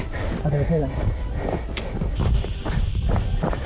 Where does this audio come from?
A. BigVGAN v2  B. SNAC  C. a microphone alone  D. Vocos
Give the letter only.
C